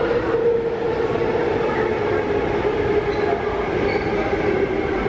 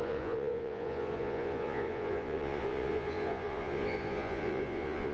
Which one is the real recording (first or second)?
first